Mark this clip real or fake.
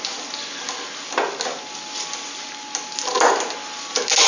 real